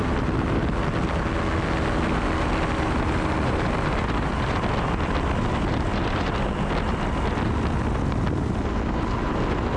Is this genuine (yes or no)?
yes